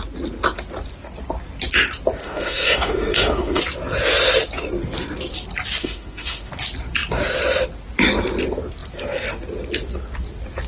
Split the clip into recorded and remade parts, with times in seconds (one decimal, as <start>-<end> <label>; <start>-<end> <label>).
0.0-2.2 recorded; 2.2-3.6 remade; 3.6-5.8 recorded; 5.8-6.5 remade; 6.5-10.7 recorded